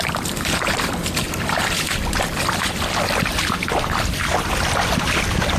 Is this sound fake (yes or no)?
yes